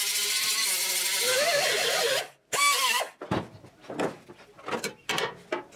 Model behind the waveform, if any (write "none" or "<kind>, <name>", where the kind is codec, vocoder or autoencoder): none